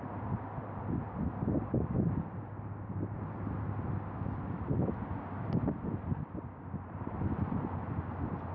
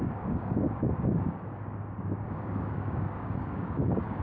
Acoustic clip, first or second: first